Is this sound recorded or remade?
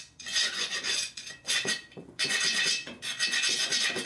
remade